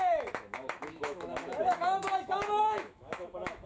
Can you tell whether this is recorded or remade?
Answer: remade